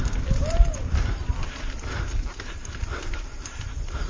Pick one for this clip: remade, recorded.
remade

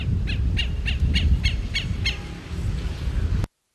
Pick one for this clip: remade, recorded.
recorded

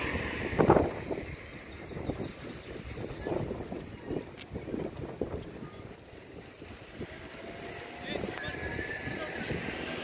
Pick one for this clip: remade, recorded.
recorded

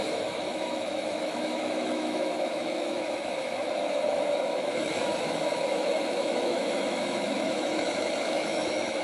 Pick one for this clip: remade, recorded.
remade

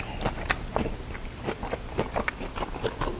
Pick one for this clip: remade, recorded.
recorded